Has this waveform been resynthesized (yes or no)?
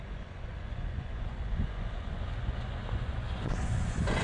yes